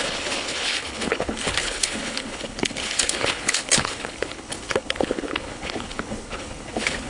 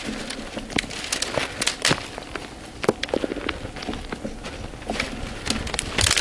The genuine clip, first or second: second